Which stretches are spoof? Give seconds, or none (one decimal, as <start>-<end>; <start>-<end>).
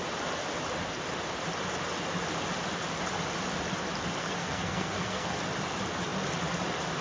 4.2-5.4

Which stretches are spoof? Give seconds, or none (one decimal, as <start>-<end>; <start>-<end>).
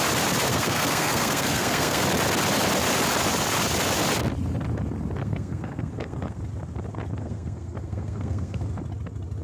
0.5-2.0; 5.2-6.4; 7.2-8.6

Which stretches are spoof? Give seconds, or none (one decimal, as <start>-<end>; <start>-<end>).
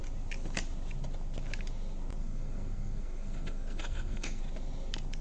2.2-4.4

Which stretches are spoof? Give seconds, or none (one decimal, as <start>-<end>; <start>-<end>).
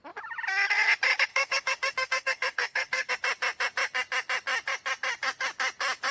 1.3-3.1